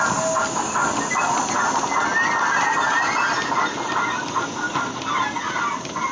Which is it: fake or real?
real